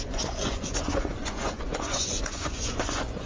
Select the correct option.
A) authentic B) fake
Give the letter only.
B